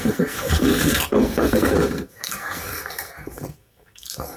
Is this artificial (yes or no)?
yes